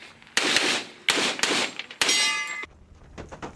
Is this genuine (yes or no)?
yes